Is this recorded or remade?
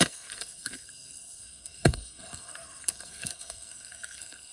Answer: remade